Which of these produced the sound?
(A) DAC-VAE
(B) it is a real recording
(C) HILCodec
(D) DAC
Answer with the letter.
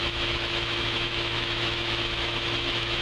A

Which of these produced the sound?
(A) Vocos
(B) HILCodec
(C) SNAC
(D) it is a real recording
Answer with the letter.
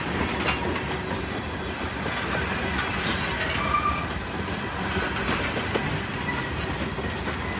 D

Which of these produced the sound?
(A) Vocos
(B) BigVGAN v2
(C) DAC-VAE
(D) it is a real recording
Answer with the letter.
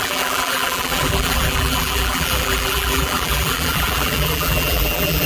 B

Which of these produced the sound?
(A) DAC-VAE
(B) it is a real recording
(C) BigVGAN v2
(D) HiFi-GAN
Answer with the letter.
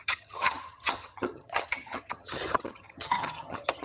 D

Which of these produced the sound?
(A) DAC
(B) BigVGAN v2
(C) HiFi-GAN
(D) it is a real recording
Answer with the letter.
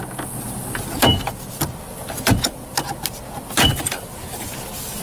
D